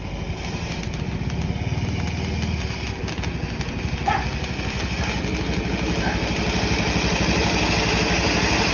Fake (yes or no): no